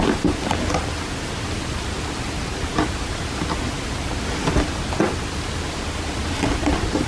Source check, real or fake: real